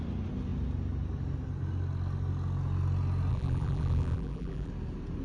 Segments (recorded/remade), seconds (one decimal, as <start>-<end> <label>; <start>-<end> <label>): 0.0-3.3 recorded; 3.3-4.7 remade; 4.7-5.2 recorded